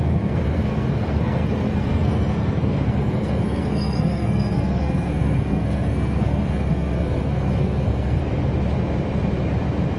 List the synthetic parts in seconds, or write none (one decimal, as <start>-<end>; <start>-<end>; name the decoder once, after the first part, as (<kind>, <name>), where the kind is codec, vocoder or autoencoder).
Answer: 0.0-8.2 (codec, SNAC)